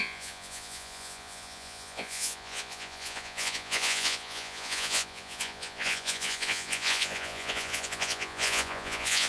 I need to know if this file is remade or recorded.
remade